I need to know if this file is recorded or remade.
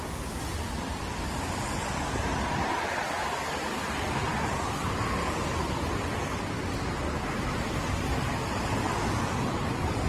remade